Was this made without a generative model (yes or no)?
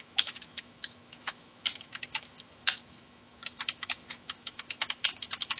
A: no